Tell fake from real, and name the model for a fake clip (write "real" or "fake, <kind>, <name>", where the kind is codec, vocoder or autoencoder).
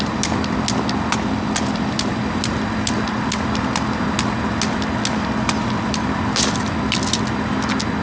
real